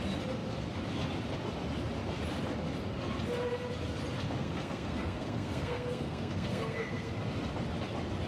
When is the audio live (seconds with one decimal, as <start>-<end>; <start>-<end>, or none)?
0.0-4.4; 7.1-8.3